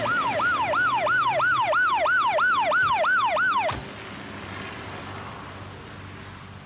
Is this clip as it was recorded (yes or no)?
yes